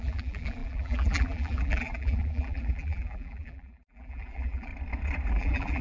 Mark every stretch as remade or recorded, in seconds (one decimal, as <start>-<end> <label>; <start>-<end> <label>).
0.0-4.7 remade; 4.7-5.3 recorded; 5.3-5.8 remade